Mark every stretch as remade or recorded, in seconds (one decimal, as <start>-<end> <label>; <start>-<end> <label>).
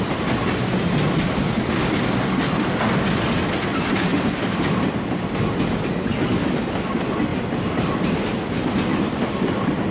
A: 0.0-3.7 recorded; 3.7-4.6 remade; 4.6-7.3 recorded; 7.3-8.2 remade; 8.2-9.9 recorded